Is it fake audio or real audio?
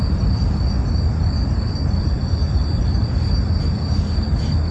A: real